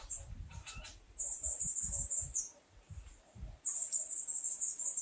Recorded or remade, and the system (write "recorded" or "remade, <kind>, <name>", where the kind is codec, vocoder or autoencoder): remade, vocoder, BigVGAN v2